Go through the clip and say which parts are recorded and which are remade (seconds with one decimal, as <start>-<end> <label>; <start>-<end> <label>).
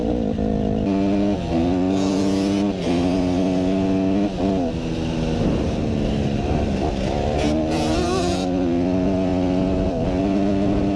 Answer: 0.0-11.0 recorded